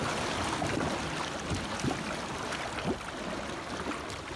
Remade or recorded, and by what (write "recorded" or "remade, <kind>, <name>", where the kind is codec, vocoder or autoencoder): recorded